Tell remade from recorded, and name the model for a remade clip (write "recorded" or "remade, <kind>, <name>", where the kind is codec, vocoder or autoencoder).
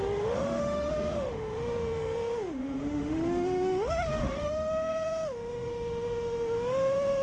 remade, autoencoder, DAC-VAE